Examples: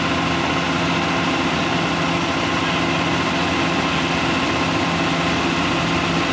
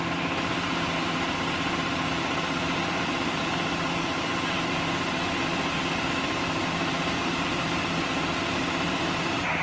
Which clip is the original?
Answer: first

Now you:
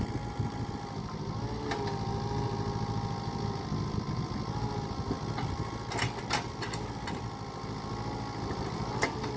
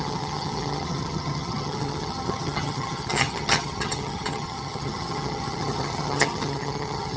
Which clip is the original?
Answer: first